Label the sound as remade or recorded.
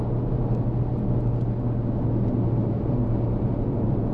recorded